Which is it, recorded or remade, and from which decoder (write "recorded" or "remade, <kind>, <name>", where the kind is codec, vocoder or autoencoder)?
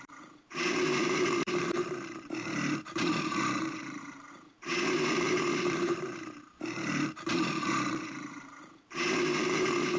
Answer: remade, vocoder, BigVGAN v2